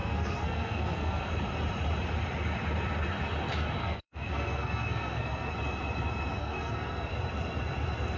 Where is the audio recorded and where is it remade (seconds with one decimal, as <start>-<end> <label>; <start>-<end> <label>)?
0.0-1.3 remade; 1.3-3.8 recorded; 3.8-5.5 remade; 5.5-6.4 recorded; 6.4-7.1 remade; 7.1-8.2 recorded